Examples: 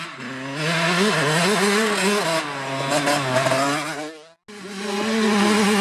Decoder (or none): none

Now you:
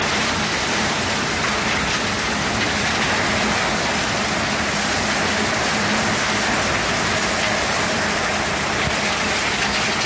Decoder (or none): none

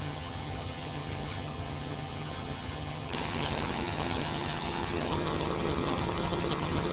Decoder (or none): vocoder, HiFi-GAN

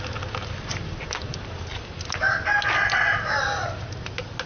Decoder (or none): none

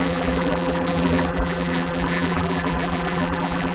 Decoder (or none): vocoder, BigVGAN v2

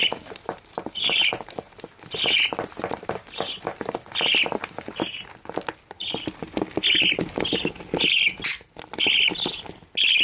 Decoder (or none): none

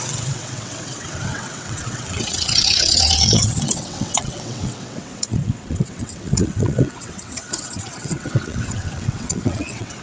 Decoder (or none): vocoder, WaveNeXt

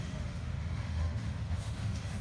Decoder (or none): autoencoder, DAC-VAE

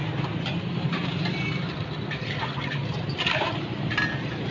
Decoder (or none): none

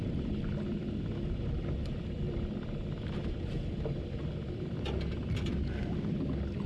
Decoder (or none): none